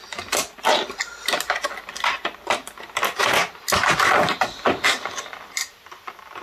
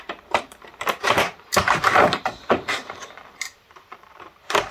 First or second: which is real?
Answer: first